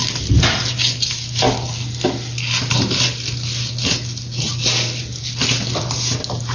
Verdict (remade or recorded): recorded